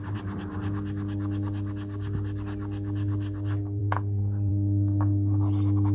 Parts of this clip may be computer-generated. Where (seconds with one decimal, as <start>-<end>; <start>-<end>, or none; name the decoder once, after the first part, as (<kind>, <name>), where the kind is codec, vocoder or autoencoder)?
3.8-4.5 (vocoder, Vocos)